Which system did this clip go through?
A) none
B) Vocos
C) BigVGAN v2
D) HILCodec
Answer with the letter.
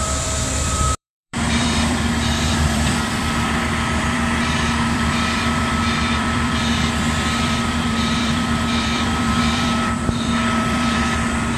C